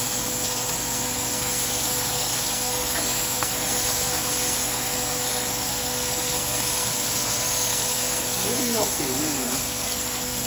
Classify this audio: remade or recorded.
remade